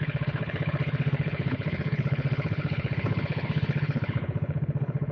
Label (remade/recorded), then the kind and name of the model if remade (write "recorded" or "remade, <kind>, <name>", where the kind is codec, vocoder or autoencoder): remade, codec, HILCodec